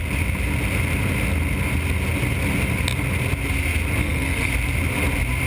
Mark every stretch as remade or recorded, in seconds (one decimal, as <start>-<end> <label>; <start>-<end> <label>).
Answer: 0.0-4.0 recorded; 4.0-4.5 remade; 4.5-5.5 recorded